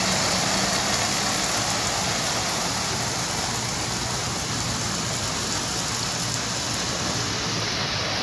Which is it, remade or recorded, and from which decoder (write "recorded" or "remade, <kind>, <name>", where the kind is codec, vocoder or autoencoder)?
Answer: recorded